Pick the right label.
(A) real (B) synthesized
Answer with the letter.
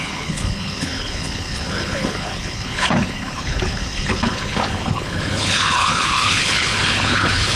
B